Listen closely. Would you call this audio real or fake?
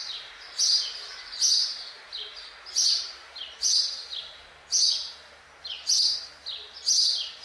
real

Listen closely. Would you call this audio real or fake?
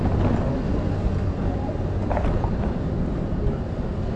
real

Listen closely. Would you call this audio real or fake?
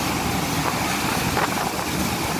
real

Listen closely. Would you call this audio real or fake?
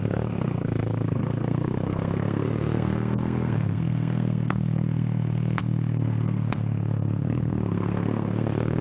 fake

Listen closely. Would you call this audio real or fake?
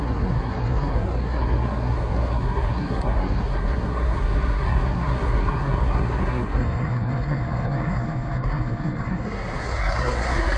fake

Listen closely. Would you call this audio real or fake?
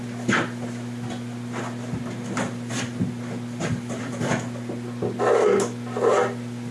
real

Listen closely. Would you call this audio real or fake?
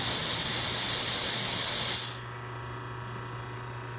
real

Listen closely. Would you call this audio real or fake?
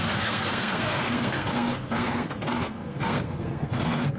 fake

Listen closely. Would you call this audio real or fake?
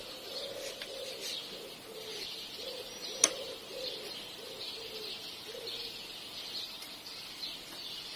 real